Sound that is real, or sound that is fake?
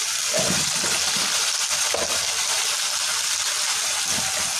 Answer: real